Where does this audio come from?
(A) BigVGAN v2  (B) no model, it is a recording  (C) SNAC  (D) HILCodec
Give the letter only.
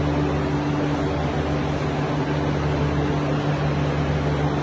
B